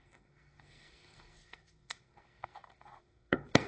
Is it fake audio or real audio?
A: fake